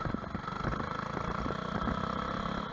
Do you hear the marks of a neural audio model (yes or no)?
no